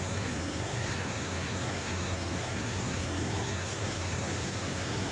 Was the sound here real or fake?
fake